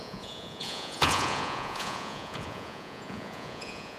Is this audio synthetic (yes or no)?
yes